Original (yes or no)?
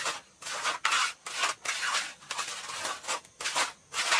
yes